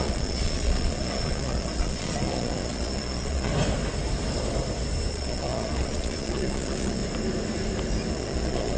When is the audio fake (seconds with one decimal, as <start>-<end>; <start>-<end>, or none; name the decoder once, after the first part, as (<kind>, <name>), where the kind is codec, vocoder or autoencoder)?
0.0-3.5 (vocoder, Vocos); 5.1-7.0; 8.1-8.8